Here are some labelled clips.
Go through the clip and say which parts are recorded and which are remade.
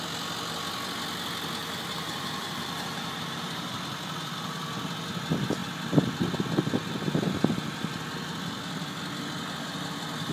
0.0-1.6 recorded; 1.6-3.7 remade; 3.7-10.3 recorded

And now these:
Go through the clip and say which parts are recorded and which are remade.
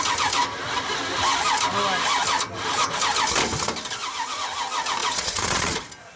0.0-5.0 recorded; 5.0-5.8 remade; 5.8-6.2 recorded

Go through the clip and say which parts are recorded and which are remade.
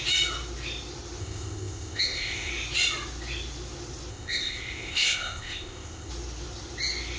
0.0-1.2 recorded; 1.2-2.5 remade; 2.5-4.1 recorded; 4.1-6.1 remade; 6.1-7.2 recorded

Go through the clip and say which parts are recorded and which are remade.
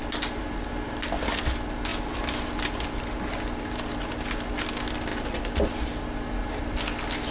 0.0-7.3 recorded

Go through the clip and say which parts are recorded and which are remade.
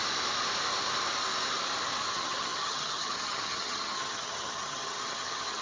0.0-2.1 recorded; 2.1-5.6 remade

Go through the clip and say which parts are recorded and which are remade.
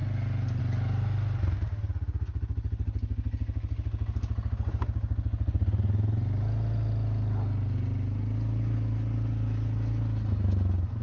0.0-11.0 recorded